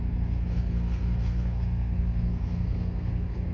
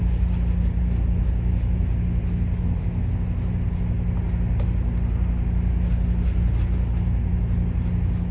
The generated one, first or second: first